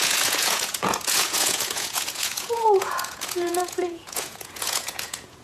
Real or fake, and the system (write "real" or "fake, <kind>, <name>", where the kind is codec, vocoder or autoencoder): fake, vocoder, Vocos